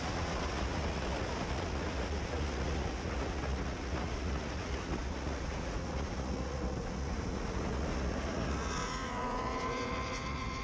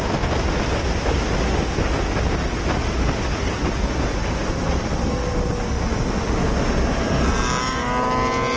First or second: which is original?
second